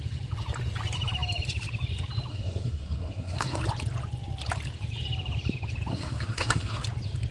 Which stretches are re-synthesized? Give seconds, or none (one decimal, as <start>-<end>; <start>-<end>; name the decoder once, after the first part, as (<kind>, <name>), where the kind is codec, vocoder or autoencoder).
2.3-3.6 (codec, SNAC); 5.9-6.8